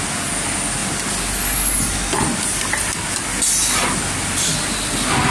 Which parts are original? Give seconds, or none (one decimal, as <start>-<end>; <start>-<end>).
0.0-5.3

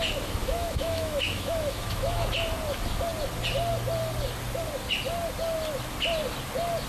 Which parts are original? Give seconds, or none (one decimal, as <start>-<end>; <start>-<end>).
0.0-0.4; 2.3-6.9

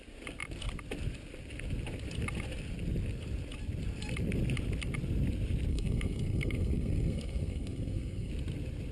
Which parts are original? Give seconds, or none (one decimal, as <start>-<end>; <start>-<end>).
0.0-5.7; 8.3-8.9